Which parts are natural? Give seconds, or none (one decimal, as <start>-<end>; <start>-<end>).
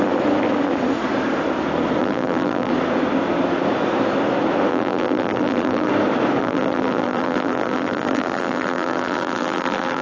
0.0-2.0; 2.7-4.7; 5.9-6.4